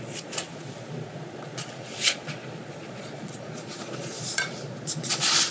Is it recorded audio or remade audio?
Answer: remade